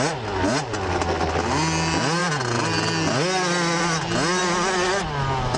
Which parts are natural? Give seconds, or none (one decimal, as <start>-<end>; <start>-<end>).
0.0-5.6